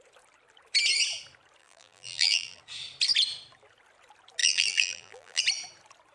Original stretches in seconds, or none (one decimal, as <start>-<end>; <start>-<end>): 0.0-1.6; 2.6-4.4; 5.4-6.1